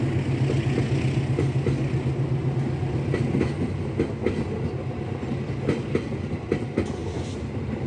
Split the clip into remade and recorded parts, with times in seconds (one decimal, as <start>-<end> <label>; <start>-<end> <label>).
0.0-7.9 recorded